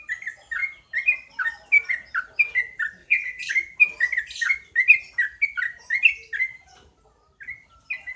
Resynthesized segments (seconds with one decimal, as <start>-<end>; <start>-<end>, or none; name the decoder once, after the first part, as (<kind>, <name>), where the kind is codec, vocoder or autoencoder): 3.0-3.5 (vocoder, WaveNeXt)